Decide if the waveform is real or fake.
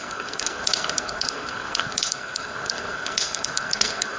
fake